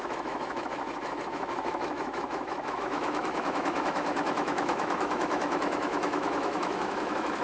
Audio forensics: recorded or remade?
remade